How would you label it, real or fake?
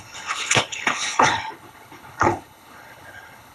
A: fake